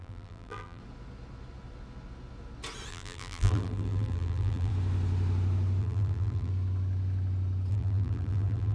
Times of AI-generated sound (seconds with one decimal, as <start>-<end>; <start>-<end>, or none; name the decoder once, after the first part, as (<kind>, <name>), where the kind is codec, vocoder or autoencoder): 0.0-0.8 (vocoder, BigVGAN v2); 2.9-4.7; 5.8-6.5; 7.7-8.7